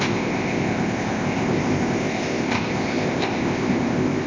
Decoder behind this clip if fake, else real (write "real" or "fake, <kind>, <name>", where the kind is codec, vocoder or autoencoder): fake, codec, ZipCodec